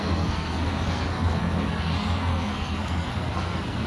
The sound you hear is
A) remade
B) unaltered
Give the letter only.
A